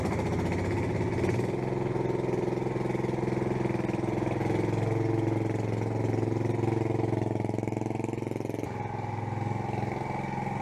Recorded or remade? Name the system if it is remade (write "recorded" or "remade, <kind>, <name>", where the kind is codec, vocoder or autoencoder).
recorded